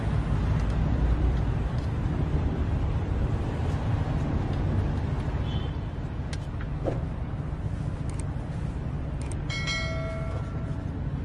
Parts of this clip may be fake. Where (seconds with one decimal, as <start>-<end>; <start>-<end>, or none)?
0.4-3.9